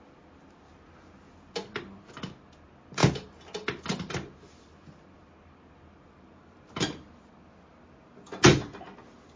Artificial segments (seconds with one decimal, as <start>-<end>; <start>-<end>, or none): none